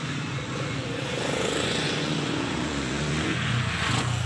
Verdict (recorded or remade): remade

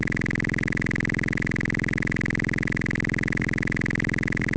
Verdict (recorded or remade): recorded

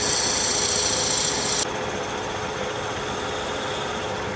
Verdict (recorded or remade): recorded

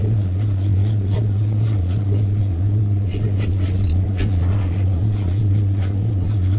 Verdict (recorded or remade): remade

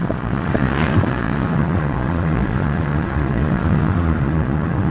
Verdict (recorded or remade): remade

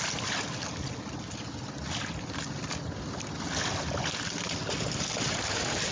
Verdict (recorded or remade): recorded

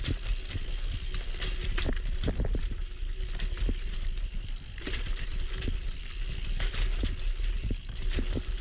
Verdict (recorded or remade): recorded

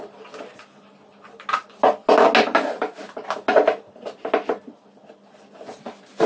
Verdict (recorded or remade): recorded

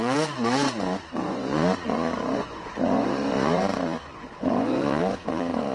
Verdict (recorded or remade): remade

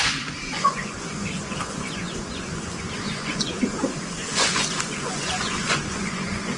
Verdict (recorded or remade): remade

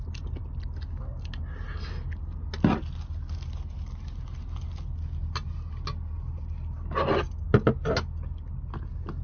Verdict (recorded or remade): recorded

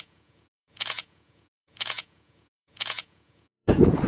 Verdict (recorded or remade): remade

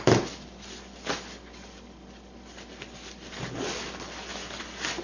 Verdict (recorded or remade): recorded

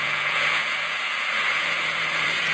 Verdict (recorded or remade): remade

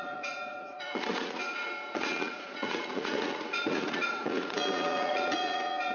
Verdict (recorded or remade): remade